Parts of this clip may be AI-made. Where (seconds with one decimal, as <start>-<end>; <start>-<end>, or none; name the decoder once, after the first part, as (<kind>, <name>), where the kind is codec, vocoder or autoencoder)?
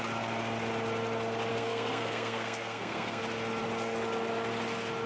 1.5-3.2 (codec, SNAC)